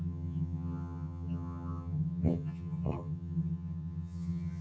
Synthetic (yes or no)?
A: yes